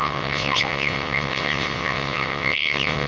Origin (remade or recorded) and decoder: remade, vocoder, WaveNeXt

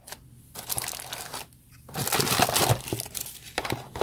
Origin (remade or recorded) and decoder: recorded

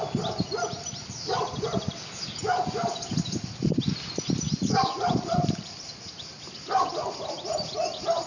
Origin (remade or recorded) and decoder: recorded